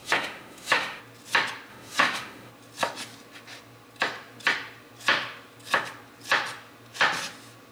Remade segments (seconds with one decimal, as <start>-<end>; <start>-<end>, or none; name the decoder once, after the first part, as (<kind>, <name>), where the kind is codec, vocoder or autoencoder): 0.0-1.0 (autoencoder, DAC-VAE); 1.7-2.5